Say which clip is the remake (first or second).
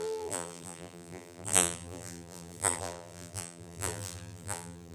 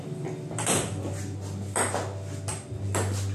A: first